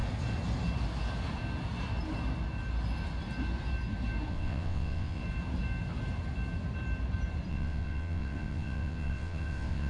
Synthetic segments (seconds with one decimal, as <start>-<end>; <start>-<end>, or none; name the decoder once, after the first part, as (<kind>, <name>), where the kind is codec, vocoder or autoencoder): 4.3-5.2 (vocoder, WaveNeXt); 7.5-9.9